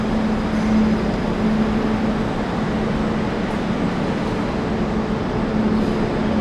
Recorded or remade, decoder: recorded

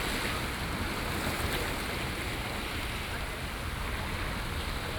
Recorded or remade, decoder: recorded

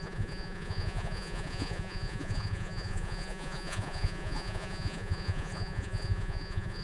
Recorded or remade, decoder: remade, vocoder, Vocos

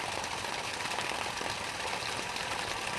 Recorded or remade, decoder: recorded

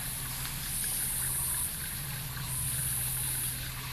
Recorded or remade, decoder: recorded